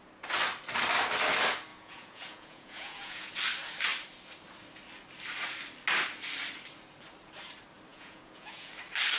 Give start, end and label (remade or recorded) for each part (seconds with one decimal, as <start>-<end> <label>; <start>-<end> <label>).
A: 0.0-1.7 recorded; 1.7-3.3 remade; 3.3-7.9 recorded; 7.9-8.7 remade; 8.7-9.2 recorded